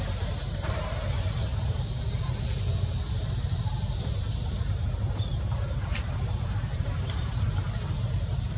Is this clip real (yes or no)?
no